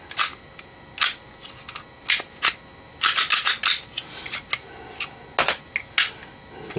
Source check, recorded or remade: recorded